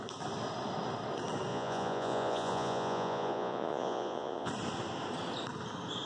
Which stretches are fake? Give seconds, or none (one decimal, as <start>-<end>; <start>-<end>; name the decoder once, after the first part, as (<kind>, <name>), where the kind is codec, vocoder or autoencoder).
1.5-4.5 (vocoder, Vocos)